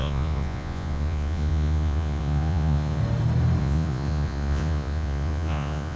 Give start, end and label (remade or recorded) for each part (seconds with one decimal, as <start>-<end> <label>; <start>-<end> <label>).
0.0-3.0 remade; 3.0-3.6 recorded; 3.6-6.0 remade